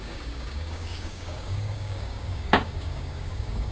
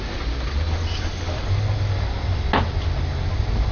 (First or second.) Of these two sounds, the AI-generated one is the first